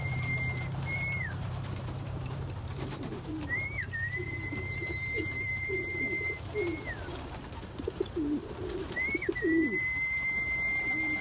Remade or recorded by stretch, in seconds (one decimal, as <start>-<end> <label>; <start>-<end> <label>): 0.0-11.2 remade